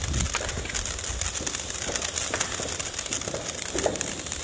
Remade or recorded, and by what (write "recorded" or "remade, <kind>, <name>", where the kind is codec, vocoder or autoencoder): recorded